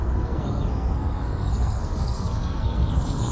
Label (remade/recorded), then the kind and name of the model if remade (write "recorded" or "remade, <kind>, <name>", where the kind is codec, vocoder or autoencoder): remade, codec, SNAC